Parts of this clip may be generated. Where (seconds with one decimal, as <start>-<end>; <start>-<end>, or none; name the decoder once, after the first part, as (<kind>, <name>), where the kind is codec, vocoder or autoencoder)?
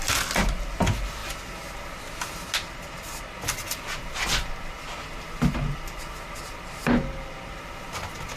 none